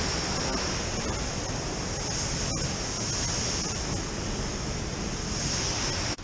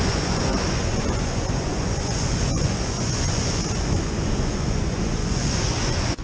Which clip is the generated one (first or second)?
second